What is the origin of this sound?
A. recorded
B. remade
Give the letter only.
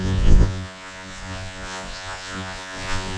B